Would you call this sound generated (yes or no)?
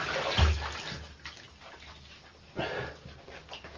no